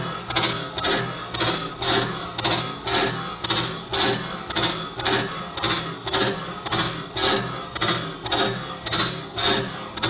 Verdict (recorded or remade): recorded